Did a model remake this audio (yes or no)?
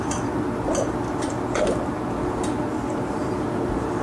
no